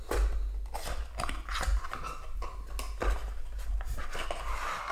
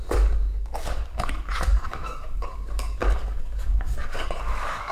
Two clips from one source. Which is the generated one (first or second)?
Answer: second